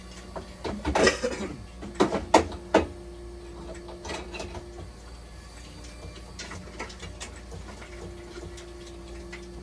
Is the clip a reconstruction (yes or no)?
no